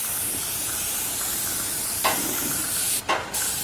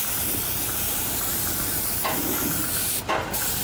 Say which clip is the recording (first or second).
second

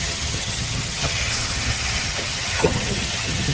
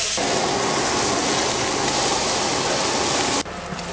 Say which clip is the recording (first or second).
second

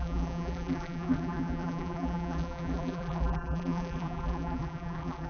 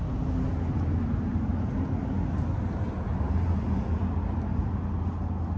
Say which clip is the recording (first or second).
second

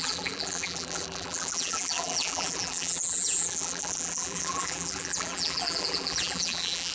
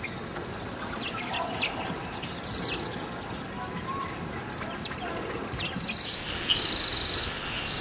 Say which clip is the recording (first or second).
second